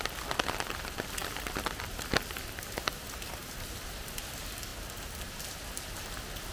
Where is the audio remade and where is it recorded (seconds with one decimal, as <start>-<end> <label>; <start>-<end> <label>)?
0.0-6.5 recorded